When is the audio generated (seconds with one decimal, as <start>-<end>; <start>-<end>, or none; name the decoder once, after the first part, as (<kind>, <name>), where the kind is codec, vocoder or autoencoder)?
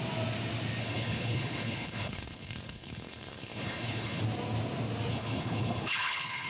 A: 0.8-4.2 (codec, HILCodec); 5.1-6.5